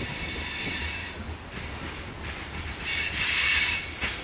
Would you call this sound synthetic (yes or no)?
no